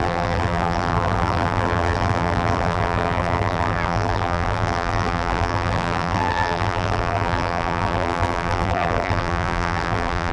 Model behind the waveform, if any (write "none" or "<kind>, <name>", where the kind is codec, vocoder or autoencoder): vocoder, BigVGAN v2